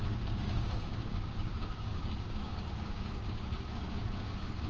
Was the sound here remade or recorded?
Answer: remade